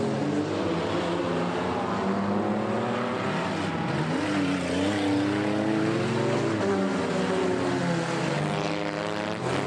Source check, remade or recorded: recorded